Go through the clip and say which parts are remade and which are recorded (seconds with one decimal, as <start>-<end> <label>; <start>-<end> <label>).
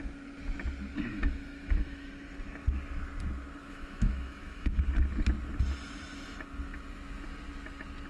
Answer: 0.0-1.1 recorded; 1.1-2.1 remade; 2.1-3.6 recorded; 3.6-4.8 remade; 4.8-8.1 recorded